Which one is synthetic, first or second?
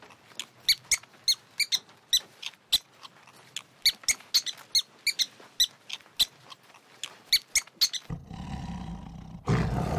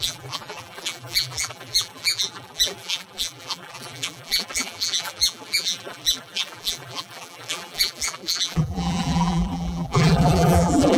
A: second